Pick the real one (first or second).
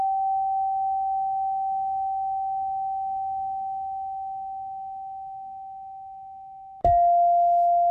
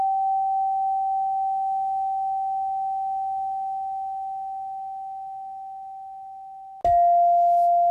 second